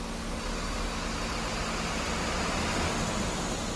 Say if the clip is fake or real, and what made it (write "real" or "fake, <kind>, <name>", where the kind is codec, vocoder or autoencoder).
real